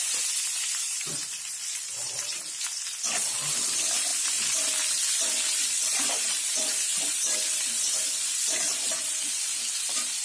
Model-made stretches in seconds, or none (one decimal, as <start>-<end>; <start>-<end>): 0.0-4.1; 4.9-10.2